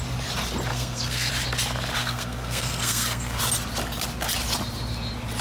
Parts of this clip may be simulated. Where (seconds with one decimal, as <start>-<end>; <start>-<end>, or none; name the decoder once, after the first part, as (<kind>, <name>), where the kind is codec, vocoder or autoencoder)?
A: 0.7-1.3 (codec, SNAC); 2.0-3.4